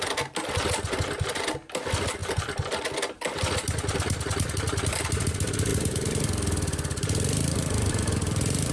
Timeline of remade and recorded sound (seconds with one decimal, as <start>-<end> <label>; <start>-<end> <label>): 0.0-2.2 recorded; 2.2-2.8 remade; 2.8-5.7 recorded; 5.7-8.7 remade